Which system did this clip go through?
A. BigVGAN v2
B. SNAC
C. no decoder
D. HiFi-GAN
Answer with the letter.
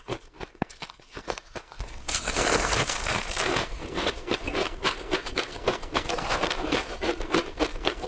B